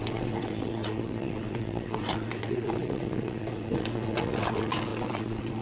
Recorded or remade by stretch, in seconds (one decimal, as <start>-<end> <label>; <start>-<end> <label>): 0.0-5.6 remade